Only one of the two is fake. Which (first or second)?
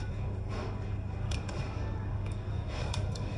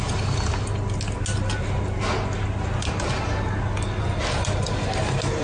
first